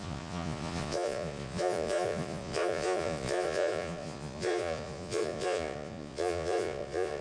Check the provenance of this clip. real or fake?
fake